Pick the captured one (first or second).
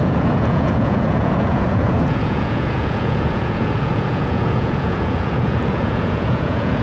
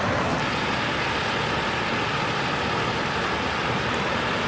second